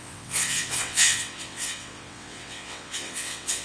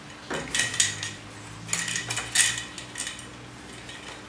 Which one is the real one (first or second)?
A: second